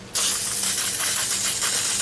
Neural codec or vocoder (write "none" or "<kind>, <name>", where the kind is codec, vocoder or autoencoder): none